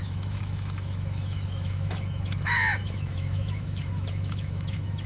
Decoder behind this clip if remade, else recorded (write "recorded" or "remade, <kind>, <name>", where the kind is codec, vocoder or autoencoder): remade, autoencoder, DAC-VAE